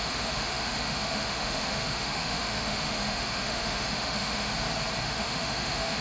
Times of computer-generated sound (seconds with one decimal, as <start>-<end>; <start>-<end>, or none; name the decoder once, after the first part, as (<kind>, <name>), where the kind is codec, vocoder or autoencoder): 0.0-4.5 (autoencoder, DAC-VAE); 5.0-6.0